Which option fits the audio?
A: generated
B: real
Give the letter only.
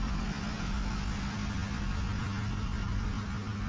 B